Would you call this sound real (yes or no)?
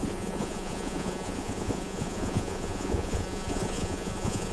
no